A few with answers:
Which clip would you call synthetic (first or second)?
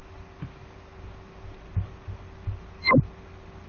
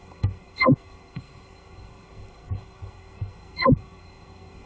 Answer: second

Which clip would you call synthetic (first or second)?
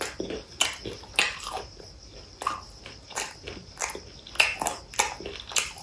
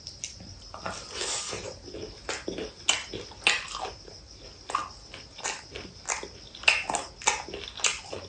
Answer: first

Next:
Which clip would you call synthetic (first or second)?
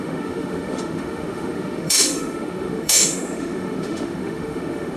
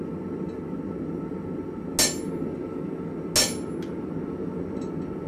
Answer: first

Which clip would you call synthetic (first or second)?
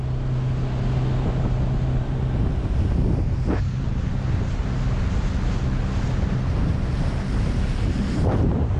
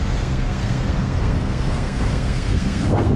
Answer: second